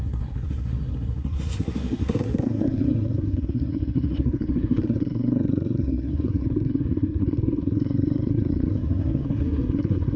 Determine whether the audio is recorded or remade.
remade